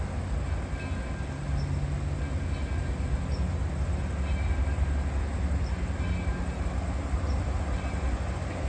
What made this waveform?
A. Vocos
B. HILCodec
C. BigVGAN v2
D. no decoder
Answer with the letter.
D